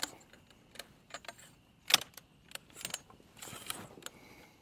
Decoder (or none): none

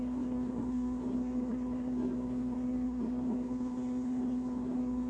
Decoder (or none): codec, SNAC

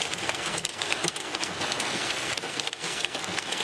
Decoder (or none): codec, SNAC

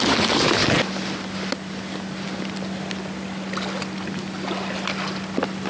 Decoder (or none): none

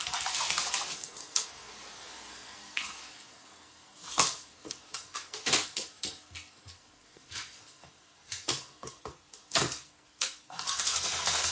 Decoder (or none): codec, SNAC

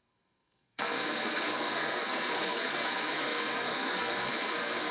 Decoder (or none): codec, SNAC